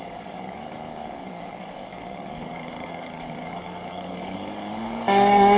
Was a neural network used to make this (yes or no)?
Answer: yes